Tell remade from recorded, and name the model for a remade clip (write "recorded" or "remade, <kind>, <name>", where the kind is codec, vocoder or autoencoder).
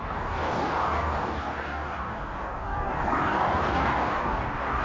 remade, codec, DAC